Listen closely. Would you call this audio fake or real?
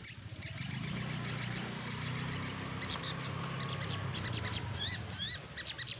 real